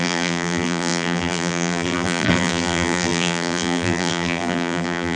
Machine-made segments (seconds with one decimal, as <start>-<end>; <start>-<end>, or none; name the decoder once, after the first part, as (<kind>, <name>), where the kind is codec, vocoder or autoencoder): 0.0-5.2 (vocoder, BigVGAN v2)